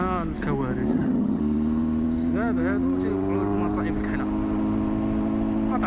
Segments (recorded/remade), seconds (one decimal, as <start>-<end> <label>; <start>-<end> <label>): 0.0-0.9 recorded; 0.9-1.4 remade; 1.4-5.9 recorded

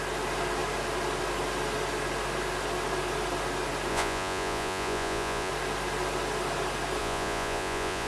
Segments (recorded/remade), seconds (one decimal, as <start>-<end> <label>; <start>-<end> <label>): 0.0-3.9 recorded; 3.9-5.5 remade; 5.5-7.0 recorded; 7.0-8.1 remade

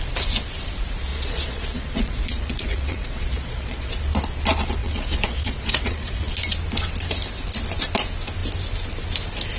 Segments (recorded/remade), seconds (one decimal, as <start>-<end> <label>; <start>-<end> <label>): 0.0-1.1 recorded; 1.1-4.0 remade; 4.0-4.8 recorded; 4.8-6.3 remade; 6.3-9.6 recorded

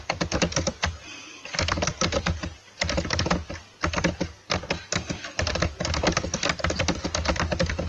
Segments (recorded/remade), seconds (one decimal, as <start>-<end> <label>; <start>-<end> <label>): 0.0-7.9 recorded

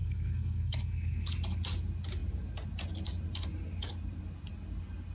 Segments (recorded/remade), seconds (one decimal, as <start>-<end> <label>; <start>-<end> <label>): 0.0-1.3 remade; 1.3-5.1 recorded

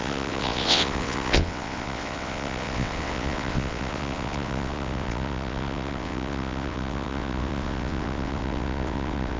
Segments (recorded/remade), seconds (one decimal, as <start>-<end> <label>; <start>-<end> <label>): 0.0-9.4 remade

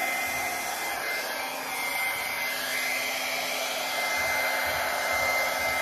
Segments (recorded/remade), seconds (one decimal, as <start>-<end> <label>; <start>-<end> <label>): 0.0-5.8 recorded